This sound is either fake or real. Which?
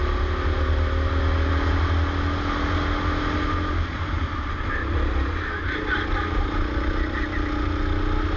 real